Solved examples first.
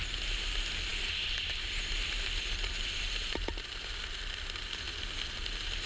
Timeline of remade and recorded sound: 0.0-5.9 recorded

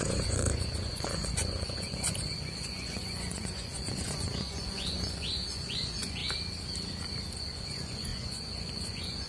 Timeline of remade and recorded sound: 0.0-6.2 remade; 6.2-7.4 recorded; 7.4-9.3 remade

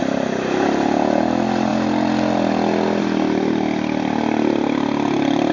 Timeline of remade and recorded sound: 0.0-5.5 recorded

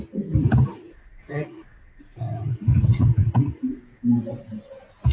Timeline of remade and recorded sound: 0.0-0.7 recorded; 0.7-3.8 remade; 3.8-5.1 recorded